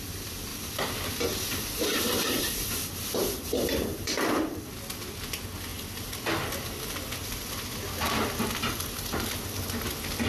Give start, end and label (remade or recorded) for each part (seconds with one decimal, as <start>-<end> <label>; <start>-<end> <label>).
0.0-0.5 recorded; 0.5-4.6 remade; 4.6-5.7 recorded; 5.7-6.2 remade; 6.2-10.3 recorded